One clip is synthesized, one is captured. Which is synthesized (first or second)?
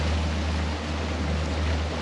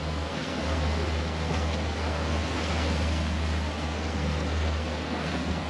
second